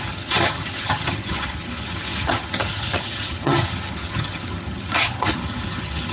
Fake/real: fake